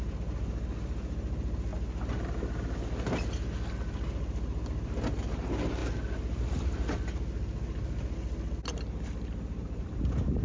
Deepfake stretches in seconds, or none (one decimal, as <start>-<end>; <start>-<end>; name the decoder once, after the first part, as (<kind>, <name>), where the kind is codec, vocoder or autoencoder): none